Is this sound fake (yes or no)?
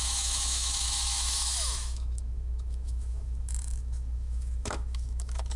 yes